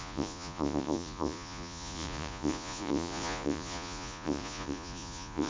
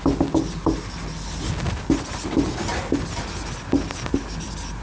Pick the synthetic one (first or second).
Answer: first